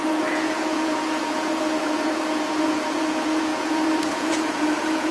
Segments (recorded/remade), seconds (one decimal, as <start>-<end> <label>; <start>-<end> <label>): 0.0-5.1 remade